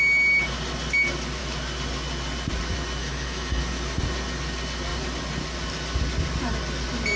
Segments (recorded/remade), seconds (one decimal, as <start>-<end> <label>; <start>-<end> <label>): 0.0-3.0 recorded; 3.0-3.6 remade; 3.6-7.2 recorded